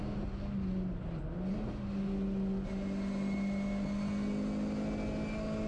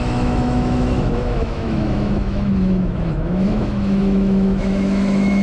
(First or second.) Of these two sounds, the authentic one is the first